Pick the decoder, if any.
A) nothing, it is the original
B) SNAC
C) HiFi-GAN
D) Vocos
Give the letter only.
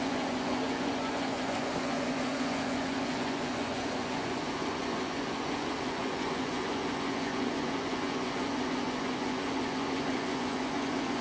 D